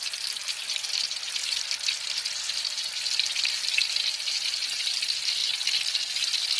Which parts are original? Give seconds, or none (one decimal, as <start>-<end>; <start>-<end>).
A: 0.0-6.6